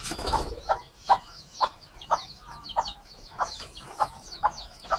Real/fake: fake